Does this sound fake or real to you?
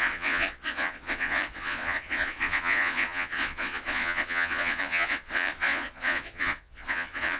fake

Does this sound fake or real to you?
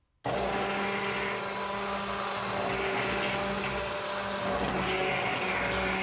real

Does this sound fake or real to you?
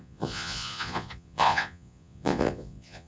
fake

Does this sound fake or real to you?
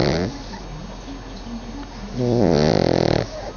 real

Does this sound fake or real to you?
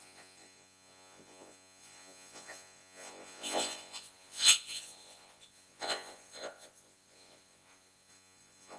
fake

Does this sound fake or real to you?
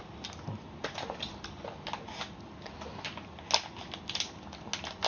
real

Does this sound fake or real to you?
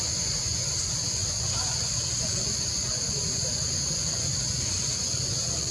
fake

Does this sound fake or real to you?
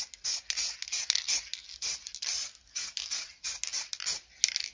real